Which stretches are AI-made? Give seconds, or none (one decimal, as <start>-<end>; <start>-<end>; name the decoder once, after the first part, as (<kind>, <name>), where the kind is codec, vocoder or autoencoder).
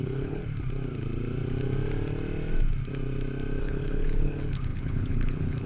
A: 0.0-0.4 (codec, HILCodec); 3.6-5.7